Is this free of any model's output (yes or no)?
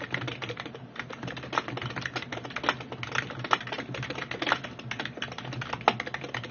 yes